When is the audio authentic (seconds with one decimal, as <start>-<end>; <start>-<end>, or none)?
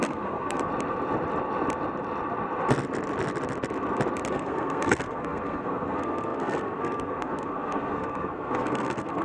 0.7-4.3